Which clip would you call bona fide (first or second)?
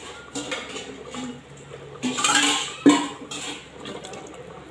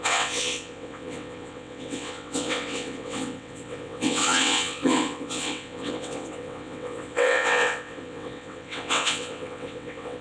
first